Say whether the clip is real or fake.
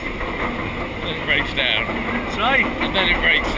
real